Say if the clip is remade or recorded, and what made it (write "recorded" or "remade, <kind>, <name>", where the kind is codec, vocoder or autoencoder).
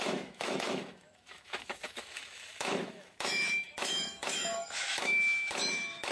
remade, autoencoder, DAC-VAE